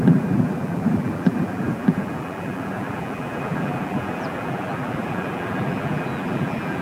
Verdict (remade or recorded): remade